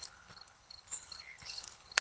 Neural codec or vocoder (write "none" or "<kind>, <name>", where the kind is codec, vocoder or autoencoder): codec, HILCodec